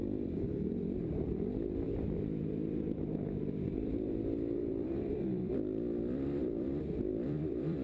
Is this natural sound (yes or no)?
no